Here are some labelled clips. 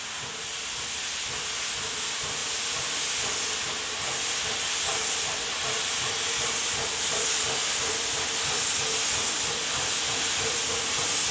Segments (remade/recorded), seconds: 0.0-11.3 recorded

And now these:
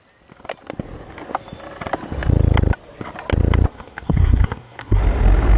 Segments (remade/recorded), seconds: 0.0-3.7 recorded; 3.7-5.0 remade; 5.0-5.6 recorded